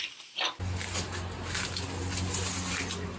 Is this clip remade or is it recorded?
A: recorded